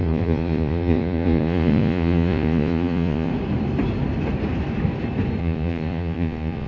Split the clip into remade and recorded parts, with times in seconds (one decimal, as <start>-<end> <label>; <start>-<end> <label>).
0.0-3.3 remade; 3.3-5.4 recorded; 5.4-6.7 remade